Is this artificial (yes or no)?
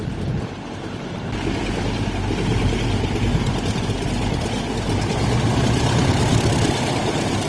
no